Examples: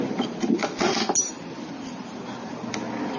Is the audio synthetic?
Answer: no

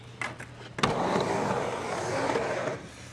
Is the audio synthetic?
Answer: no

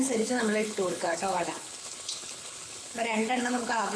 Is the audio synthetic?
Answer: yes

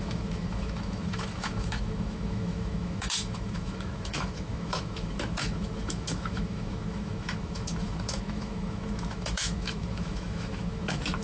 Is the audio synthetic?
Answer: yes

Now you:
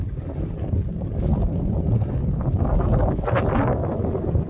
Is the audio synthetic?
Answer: no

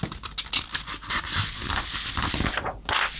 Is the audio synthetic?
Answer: no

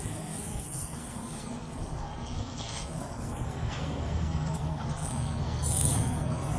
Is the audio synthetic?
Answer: yes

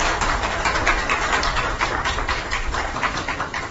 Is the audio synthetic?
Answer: yes